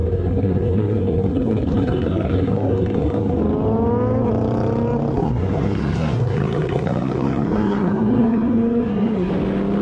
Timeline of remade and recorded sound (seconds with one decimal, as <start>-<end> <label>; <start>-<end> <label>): 0.0-3.4 remade; 3.4-5.1 recorded; 5.1-9.3 remade; 9.3-9.8 recorded